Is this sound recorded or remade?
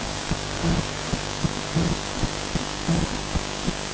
remade